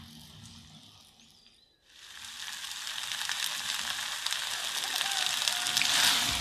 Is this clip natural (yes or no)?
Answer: yes